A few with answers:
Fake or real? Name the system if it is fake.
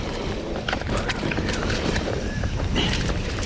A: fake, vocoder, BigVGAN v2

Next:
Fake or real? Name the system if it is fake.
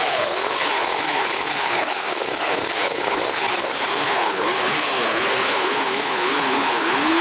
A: fake, codec, HILCodec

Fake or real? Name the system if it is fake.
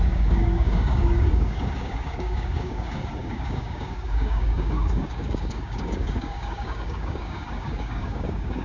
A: fake, codec, DAC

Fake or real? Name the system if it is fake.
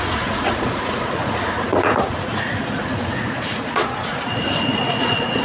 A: fake, vocoder, Vocos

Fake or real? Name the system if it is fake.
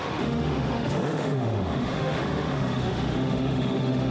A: fake, autoencoder, DAC-VAE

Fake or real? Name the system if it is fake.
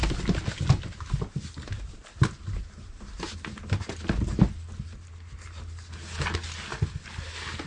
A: real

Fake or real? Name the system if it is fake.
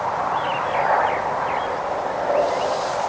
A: real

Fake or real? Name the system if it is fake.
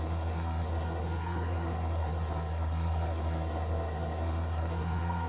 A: fake, codec, SNAC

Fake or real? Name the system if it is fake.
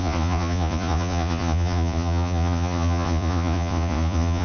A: fake, vocoder, Vocos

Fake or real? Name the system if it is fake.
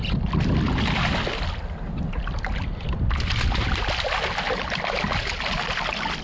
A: real